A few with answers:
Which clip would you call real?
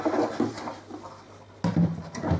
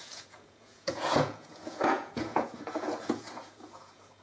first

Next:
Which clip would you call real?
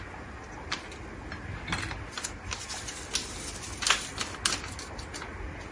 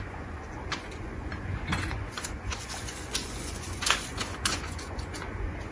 first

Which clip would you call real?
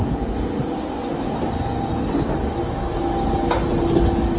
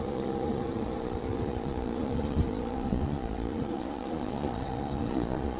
first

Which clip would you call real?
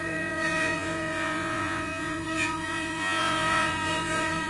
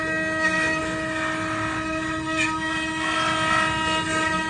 second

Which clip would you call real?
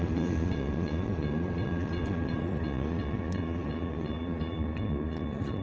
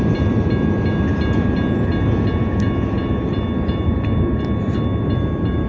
second